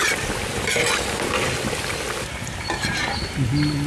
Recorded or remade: recorded